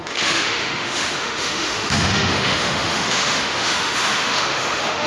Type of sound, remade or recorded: remade